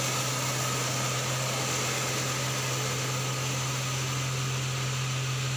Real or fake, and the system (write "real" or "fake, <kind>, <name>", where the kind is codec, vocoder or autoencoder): real